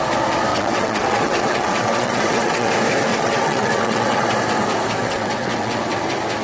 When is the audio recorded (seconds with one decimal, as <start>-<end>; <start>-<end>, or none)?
0.0-0.5; 2.7-3.1; 4.3-5.0; 6.0-6.4

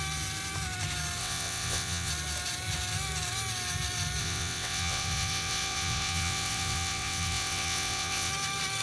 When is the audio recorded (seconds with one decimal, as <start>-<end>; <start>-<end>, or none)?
0.0-1.2; 2.1-4.2; 8.3-8.8

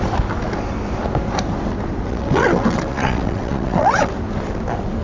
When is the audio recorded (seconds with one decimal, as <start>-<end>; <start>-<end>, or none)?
0.0-2.1; 4.1-5.0

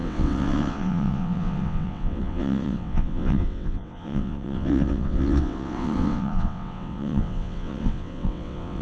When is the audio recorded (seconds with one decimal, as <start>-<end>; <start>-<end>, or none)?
none

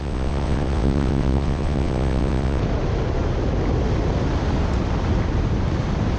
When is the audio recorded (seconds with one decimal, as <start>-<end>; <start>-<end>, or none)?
2.6-6.2

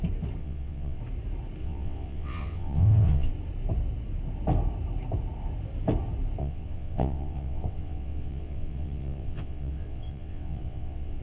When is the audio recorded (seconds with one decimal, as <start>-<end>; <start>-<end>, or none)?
0.0-0.4; 1.0-1.6; 3.3-6.4